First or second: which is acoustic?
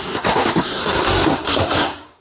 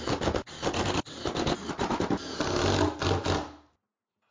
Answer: second